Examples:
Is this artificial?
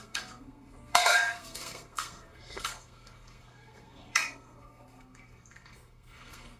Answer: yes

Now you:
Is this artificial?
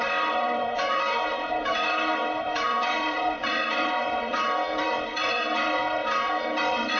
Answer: yes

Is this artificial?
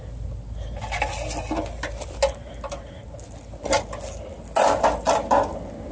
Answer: no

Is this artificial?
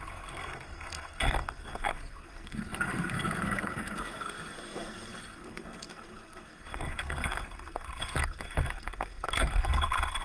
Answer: yes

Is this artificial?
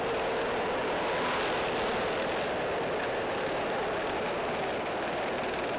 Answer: no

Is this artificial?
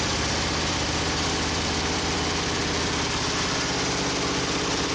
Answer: yes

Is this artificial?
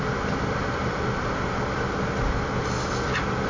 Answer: no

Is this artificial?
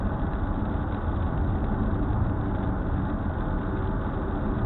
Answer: no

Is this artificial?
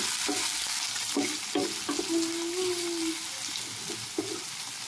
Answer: no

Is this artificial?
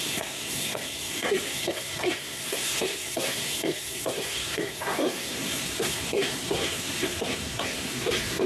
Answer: yes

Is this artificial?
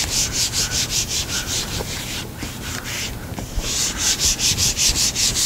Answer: yes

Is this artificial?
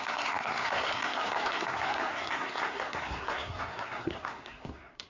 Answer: yes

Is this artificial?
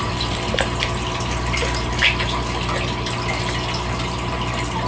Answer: no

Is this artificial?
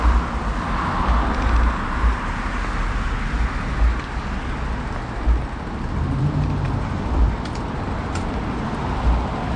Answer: no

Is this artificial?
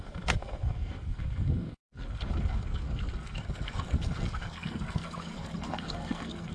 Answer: yes